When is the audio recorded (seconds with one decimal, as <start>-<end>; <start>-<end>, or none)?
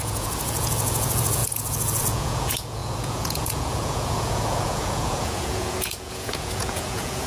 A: none